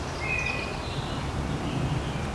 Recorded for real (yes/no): yes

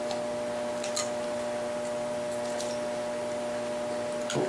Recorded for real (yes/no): yes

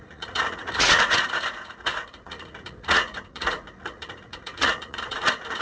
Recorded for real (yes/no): no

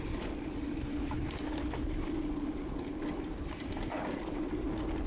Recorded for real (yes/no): no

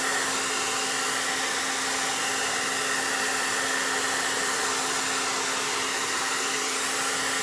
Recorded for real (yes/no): yes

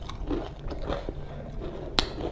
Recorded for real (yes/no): yes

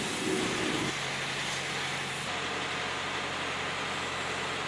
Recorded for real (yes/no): yes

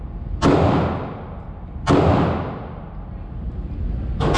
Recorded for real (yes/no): yes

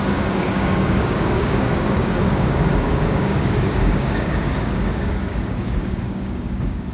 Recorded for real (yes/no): no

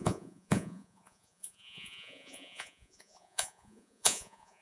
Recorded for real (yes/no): no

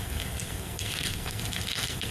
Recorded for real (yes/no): no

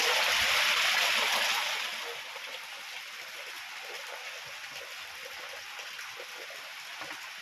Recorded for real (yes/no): yes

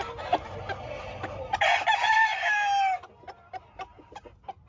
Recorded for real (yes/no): yes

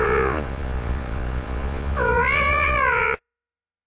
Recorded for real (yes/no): no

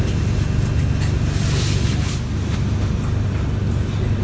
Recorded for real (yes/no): yes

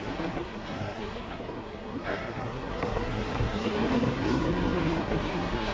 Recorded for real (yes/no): no